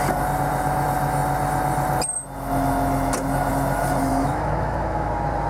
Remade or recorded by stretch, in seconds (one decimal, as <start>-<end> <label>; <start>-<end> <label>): 0.0-4.1 recorded; 4.1-5.1 remade; 5.1-5.5 recorded